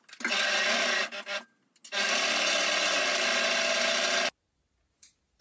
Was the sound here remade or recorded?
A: recorded